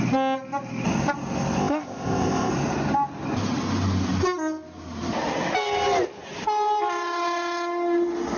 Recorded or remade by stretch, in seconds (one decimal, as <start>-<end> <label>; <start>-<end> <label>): 0.0-1.6 recorded; 1.6-2.5 remade; 2.5-8.4 recorded